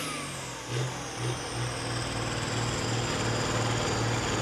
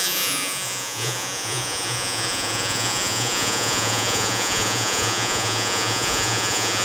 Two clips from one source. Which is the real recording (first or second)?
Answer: first